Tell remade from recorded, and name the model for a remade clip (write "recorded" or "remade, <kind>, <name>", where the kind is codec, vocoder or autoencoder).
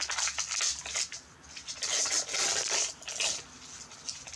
recorded